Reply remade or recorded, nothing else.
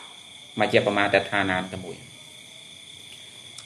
recorded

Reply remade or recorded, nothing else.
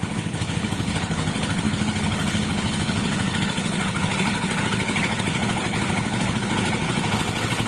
remade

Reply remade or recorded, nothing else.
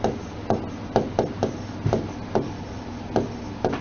recorded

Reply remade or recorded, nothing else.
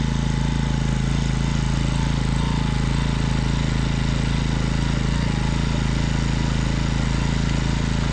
recorded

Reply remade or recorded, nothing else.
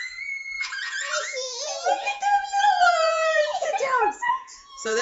remade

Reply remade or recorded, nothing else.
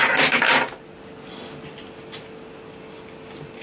recorded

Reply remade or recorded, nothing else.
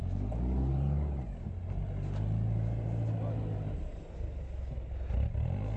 recorded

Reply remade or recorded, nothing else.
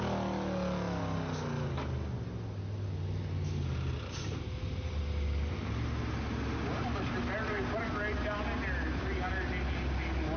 recorded